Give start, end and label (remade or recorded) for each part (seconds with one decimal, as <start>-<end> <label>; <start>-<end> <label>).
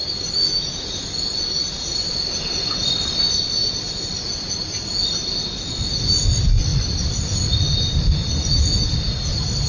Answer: 0.0-9.7 recorded